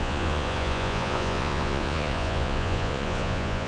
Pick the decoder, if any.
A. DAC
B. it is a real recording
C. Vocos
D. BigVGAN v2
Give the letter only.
C